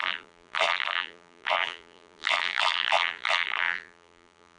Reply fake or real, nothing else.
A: fake